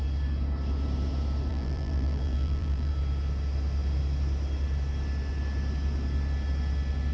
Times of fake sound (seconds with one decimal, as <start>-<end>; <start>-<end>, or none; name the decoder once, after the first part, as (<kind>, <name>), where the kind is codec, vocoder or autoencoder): 1.5-2.9 (vocoder, BigVGAN v2)